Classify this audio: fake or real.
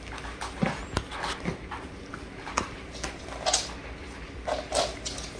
real